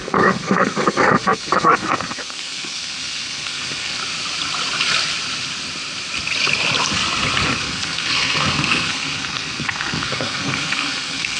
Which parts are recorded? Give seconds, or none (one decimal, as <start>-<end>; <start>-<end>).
4.0-7.6